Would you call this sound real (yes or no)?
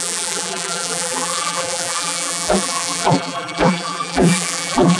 no